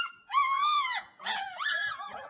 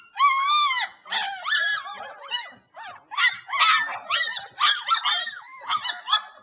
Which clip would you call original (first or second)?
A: second